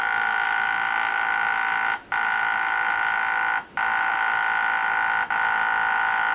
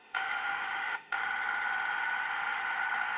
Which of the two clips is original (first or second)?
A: first